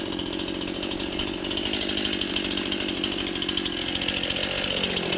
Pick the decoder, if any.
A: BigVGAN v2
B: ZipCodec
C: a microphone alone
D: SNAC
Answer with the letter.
C